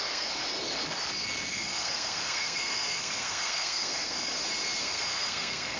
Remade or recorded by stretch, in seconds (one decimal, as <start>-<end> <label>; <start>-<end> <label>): 0.0-0.4 remade; 0.4-1.5 recorded; 1.5-4.3 remade; 4.3-4.8 recorded; 4.8-5.8 remade